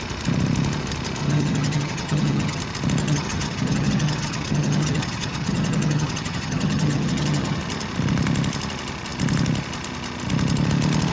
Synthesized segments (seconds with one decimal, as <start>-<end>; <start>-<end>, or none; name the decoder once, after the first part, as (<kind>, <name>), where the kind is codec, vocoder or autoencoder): 1.2-2.6 (vocoder, HiFi-GAN); 3.0-7.6